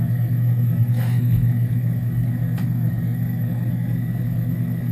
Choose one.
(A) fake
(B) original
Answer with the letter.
A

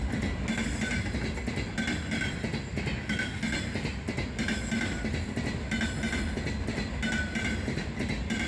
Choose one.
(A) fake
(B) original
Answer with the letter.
B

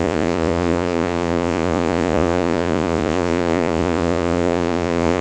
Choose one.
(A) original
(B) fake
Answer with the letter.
B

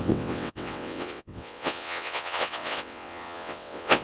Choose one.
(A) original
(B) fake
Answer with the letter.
B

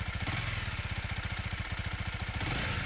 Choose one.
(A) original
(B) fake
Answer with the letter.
A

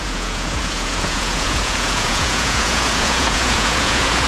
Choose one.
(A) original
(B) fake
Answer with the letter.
B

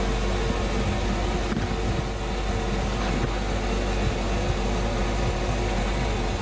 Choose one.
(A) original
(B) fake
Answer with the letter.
A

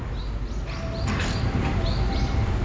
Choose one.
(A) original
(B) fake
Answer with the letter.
A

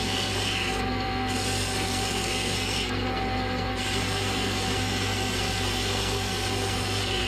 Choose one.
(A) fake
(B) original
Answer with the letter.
A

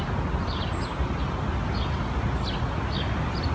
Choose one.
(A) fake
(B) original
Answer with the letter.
B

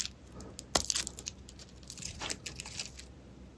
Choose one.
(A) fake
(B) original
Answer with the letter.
B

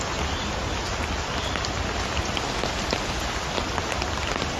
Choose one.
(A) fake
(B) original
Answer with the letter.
B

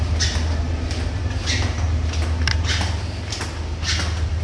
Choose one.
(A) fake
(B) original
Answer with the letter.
B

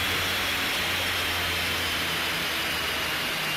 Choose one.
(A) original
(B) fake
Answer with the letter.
A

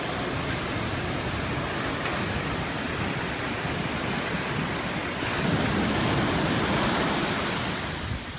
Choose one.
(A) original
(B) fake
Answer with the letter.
A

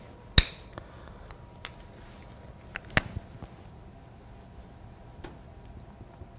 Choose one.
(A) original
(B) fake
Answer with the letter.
A